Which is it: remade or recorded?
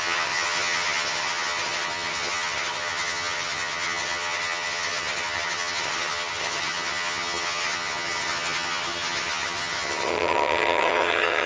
remade